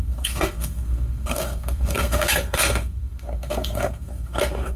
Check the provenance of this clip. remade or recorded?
remade